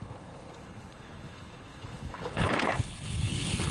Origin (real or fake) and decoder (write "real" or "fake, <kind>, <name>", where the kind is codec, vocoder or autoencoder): fake, codec, HILCodec